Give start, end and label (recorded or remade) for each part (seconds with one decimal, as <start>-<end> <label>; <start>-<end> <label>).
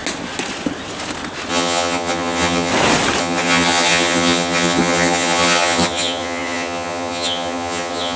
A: 0.0-1.5 recorded; 1.5-2.7 remade; 2.7-3.2 recorded; 3.2-8.2 remade